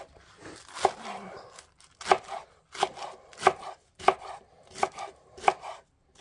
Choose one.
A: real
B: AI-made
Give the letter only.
A